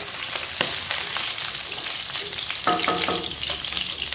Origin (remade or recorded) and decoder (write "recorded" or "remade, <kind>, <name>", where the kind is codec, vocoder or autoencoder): recorded